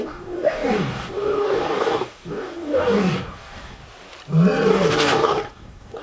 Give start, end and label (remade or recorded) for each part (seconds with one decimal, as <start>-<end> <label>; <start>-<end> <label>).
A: 0.0-3.8 remade; 3.8-4.7 recorded; 4.7-6.0 remade